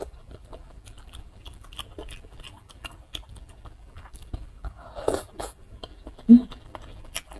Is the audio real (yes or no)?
no